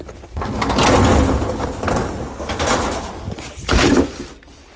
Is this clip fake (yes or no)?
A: no